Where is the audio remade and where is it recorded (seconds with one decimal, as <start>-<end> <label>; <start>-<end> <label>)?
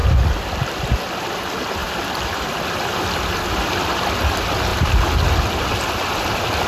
0.0-0.7 recorded; 0.7-4.7 remade; 4.7-6.1 recorded; 6.1-6.7 remade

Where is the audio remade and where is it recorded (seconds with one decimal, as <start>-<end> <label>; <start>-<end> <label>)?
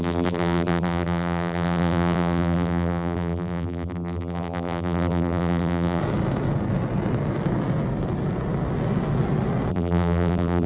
0.0-6.0 remade; 6.0-9.7 recorded; 9.7-10.7 remade